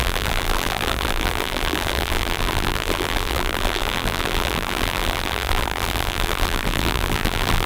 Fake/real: fake